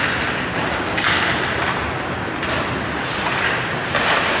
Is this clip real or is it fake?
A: real